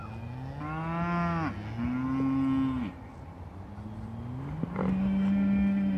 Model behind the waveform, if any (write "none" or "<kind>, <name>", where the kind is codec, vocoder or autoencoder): none